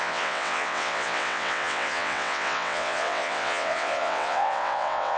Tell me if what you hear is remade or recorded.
remade